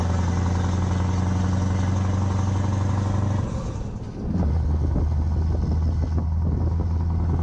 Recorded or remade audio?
recorded